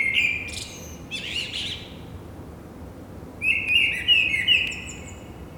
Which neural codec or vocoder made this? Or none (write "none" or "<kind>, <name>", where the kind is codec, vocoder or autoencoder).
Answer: none